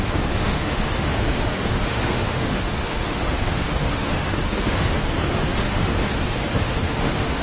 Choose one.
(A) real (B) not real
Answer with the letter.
B